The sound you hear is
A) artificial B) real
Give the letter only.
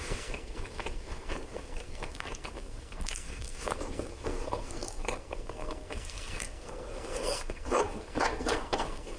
A